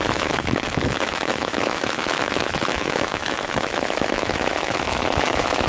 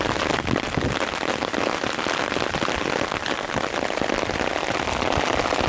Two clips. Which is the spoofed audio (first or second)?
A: first